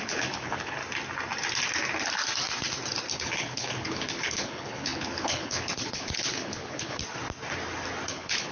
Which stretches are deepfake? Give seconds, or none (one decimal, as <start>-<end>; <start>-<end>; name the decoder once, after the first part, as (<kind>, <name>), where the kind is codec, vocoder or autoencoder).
0.0-0.8 (codec, HILCodec); 3.1-7.0; 8.1-8.5